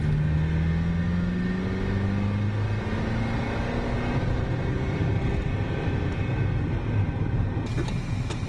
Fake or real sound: real